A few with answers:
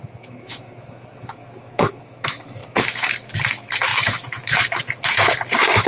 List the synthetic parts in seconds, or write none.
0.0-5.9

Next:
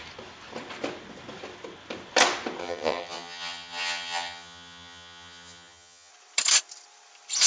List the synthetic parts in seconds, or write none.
2.6-6.1

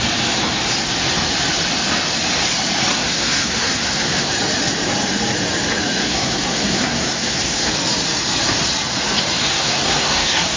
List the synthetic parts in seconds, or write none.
2.9-4.3; 6.0-7.7; 9.4-10.6

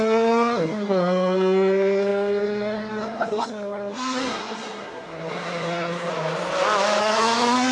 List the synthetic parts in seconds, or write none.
0.0-6.1; 7.0-7.7

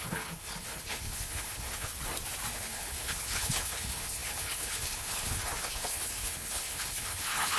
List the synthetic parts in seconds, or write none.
0.0-1.9; 2.5-7.6

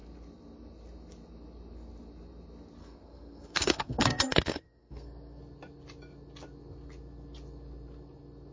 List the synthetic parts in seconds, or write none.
2.8-5.4

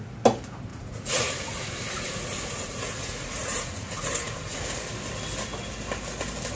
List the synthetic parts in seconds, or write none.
0.7-4.7

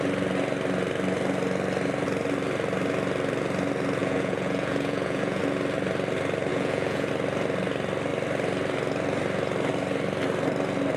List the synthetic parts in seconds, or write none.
4.0-5.4; 6.5-7.1